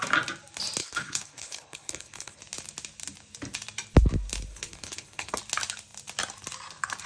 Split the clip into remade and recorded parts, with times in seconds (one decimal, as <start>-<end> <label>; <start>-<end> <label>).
0.0-0.8 recorded; 0.8-2.4 remade; 2.4-4.5 recorded; 4.5-5.4 remade; 5.4-7.1 recorded